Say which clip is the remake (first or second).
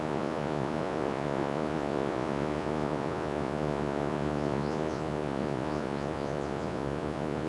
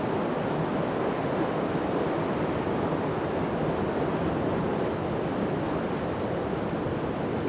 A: first